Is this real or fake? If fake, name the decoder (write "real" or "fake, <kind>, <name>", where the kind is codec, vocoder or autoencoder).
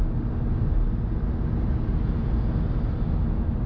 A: real